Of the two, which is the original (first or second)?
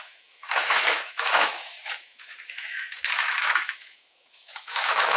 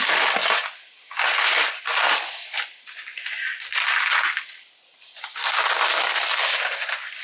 second